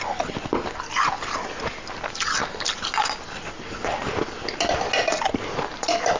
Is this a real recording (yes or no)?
yes